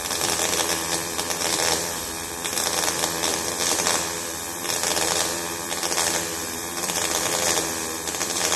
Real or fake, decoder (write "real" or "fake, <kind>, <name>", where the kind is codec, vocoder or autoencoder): fake, vocoder, BigVGAN v2